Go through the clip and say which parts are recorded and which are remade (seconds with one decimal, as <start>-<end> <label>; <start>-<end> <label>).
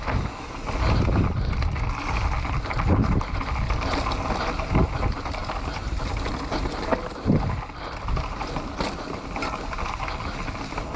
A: 0.0-11.0 recorded